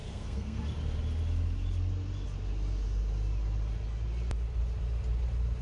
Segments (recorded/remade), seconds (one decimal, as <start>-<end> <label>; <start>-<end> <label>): 0.0-0.6 remade; 0.6-5.6 recorded